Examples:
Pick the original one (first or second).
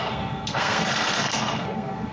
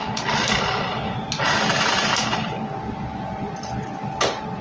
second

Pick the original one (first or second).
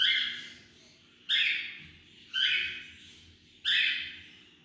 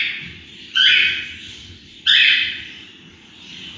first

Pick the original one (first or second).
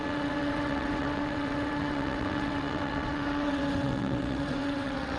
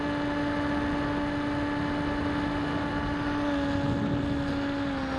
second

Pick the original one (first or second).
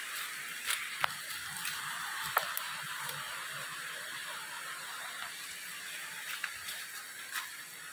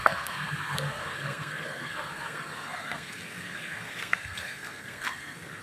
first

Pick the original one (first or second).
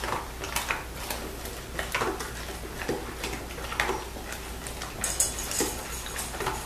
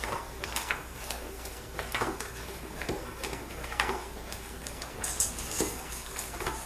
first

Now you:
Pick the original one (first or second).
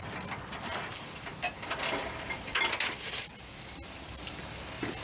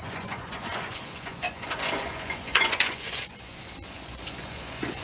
first